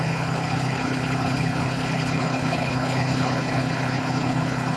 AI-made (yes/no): yes